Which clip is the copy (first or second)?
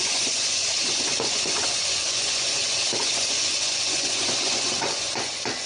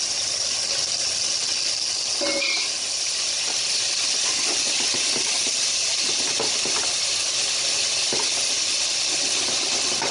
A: first